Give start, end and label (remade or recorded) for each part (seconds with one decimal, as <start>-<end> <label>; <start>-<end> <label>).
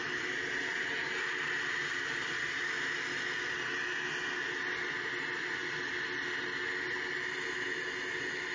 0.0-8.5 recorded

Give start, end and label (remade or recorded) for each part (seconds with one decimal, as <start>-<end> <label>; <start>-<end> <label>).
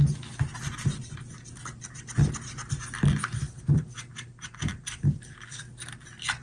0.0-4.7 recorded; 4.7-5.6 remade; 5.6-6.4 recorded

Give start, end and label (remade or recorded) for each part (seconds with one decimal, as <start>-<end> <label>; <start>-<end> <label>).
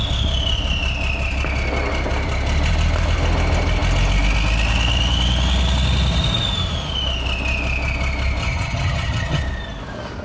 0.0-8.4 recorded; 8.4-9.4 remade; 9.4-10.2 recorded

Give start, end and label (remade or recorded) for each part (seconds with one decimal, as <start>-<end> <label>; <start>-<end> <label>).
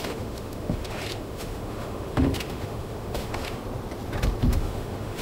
0.0-3.6 remade; 3.6-4.4 recorded; 4.4-5.2 remade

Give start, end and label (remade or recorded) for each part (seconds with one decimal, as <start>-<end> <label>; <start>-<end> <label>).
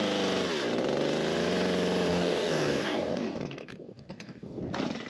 0.0-2.1 recorded; 2.1-4.6 remade; 4.6-5.1 recorded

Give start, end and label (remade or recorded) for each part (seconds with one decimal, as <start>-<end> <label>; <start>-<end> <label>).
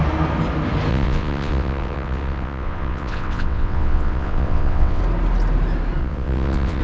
0.0-0.9 recorded; 0.9-5.0 remade; 5.0-6.0 recorded; 6.0-6.8 remade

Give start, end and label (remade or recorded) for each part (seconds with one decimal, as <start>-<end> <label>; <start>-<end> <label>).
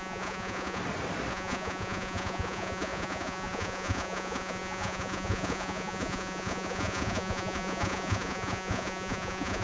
0.0-0.8 remade; 0.8-1.3 recorded; 1.3-9.6 remade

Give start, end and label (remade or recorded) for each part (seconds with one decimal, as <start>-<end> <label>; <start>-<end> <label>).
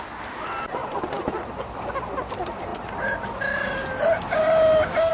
0.0-5.1 recorded